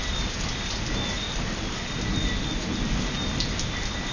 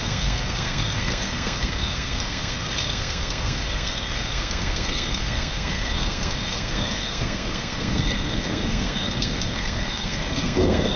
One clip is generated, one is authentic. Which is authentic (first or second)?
first